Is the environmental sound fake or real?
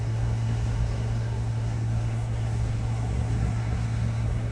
fake